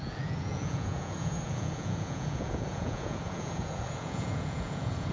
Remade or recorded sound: remade